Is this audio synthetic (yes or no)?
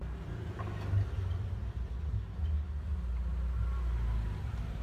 no